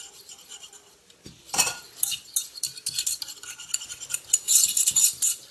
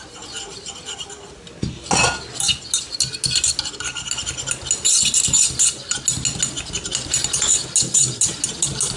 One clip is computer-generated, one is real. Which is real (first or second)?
second